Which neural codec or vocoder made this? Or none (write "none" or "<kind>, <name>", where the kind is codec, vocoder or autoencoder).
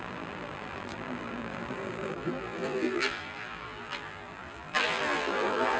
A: vocoder, BigVGAN v2